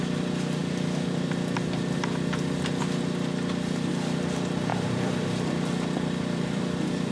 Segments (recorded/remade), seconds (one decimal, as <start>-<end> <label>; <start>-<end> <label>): 0.0-4.7 recorded; 4.7-7.1 remade